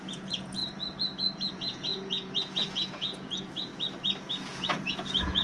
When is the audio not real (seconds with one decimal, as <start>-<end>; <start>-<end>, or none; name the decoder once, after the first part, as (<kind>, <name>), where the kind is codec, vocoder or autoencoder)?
0.0-0.6 (vocoder, Vocos); 1.5-3.7; 4.3-5.4